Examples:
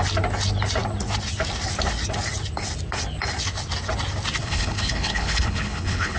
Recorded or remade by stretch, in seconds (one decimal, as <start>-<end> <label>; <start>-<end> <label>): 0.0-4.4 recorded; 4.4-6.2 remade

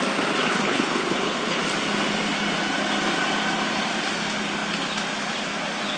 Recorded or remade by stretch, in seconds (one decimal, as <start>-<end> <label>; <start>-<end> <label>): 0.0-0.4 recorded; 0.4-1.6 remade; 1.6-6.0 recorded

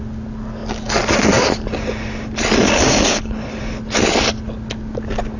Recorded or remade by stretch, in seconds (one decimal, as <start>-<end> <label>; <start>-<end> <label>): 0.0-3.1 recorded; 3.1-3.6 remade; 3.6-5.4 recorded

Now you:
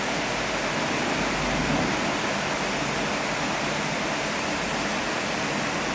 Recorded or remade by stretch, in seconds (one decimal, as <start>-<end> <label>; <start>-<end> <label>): 0.0-5.9 recorded